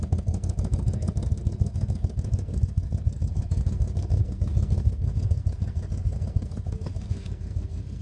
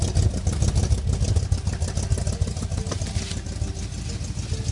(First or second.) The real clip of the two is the second